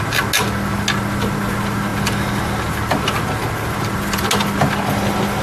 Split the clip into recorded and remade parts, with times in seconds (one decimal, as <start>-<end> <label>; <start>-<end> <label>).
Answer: 0.0-5.4 recorded